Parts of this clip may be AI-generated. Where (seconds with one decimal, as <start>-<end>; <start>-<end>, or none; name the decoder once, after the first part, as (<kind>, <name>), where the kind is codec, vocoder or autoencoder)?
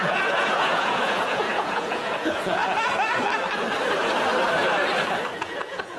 0.0-2.6 (vocoder, Vocos); 5.3-6.0